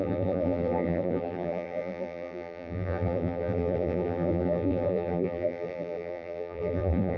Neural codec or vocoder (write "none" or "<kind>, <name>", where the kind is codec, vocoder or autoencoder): vocoder, BigVGAN v2